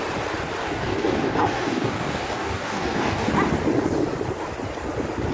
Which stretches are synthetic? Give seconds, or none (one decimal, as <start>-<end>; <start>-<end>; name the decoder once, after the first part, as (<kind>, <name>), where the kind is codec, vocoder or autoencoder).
0.6-3.3 (codec, DAC)

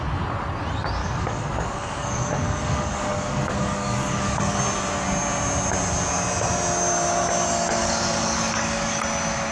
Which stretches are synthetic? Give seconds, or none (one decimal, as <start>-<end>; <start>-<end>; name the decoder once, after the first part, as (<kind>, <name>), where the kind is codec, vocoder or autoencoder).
1.0-4.6 (codec, DAC); 7.8-9.0

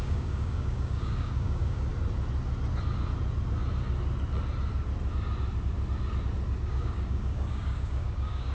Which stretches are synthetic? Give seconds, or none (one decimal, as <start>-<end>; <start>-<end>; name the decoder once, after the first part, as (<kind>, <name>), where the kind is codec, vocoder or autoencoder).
0.0-1.9 (codec, DAC); 6.6-8.5

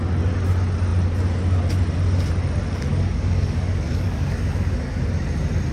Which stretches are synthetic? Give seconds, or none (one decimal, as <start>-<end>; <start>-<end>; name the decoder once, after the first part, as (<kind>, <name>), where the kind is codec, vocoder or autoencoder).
2.9-5.0 (codec, DAC)

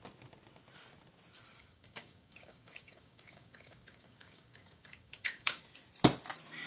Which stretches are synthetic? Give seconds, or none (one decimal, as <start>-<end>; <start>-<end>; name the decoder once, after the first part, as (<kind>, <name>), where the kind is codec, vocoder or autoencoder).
1.6-5.6 (codec, DAC)